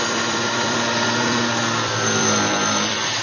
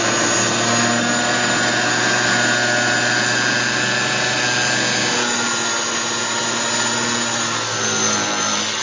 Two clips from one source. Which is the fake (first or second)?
first